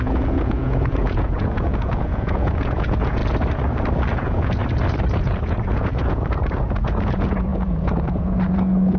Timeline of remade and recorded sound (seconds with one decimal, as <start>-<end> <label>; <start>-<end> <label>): 0.0-3.2 remade; 3.2-4.1 recorded; 4.1-4.6 remade; 4.6-5.1 recorded; 5.1-9.0 remade